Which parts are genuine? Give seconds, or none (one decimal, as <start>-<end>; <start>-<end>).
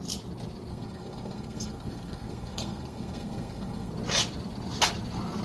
0.0-0.7; 3.9-5.4